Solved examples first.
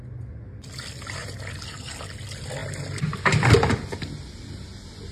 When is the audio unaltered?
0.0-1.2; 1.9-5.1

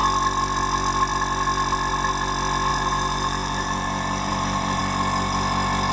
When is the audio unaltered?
0.0-2.7; 4.8-5.9

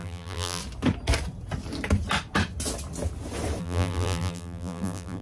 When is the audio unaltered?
0.6-3.6

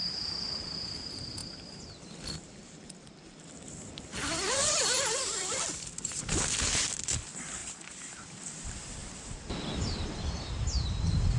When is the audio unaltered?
0.0-0.6

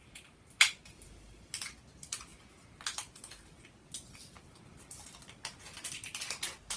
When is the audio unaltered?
0.0-6.8

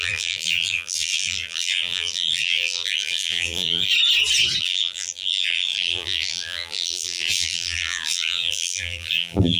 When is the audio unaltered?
3.9-4.6

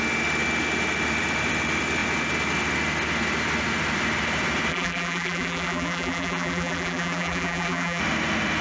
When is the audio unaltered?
0.0-4.7; 8.0-8.6